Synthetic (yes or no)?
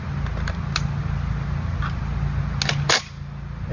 no